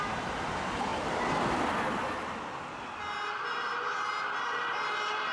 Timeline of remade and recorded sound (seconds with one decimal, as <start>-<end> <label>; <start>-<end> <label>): 0.0-5.3 recorded